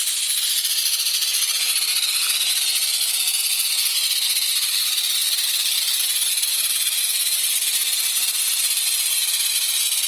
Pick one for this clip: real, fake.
real